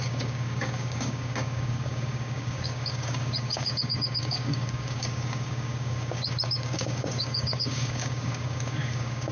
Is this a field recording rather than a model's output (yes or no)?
no